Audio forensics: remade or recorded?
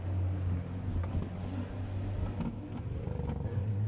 recorded